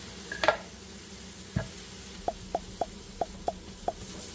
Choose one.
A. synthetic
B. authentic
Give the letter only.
B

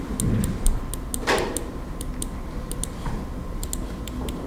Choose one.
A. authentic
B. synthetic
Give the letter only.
A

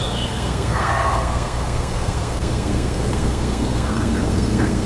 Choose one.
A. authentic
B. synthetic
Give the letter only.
B